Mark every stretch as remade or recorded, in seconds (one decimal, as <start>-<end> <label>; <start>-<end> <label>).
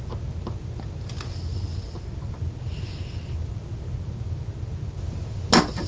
0.0-5.9 recorded